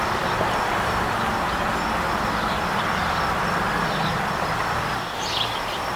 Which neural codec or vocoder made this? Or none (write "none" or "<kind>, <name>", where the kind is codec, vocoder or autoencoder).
none